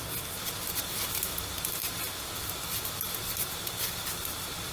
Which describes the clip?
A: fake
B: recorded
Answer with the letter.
B